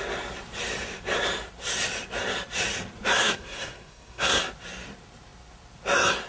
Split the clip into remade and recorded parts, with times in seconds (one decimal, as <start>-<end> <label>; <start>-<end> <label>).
0.0-3.2 recorded; 3.2-4.4 remade; 4.4-6.3 recorded